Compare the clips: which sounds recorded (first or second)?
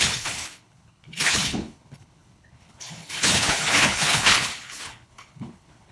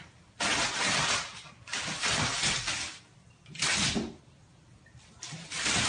second